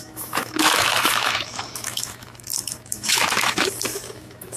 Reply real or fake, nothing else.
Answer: fake